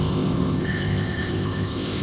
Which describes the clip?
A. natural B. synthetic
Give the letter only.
B